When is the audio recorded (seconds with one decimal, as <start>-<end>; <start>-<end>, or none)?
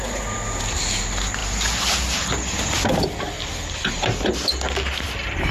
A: 0.0-5.5